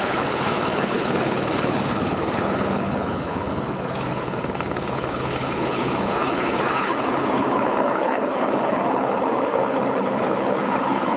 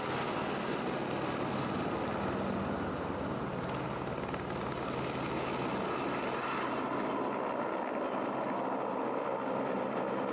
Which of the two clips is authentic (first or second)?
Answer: second